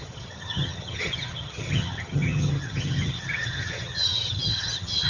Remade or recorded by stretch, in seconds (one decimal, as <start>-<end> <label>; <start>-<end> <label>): 0.0-5.1 remade